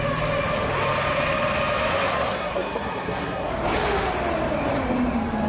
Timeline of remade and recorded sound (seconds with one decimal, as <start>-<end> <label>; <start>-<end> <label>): 0.0-1.9 recorded; 1.9-3.5 remade; 3.5-5.5 recorded